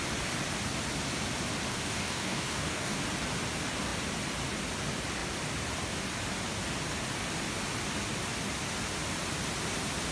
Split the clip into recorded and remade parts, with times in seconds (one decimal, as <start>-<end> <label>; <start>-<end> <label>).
0.0-1.7 recorded; 1.7-3.0 remade; 3.0-10.1 recorded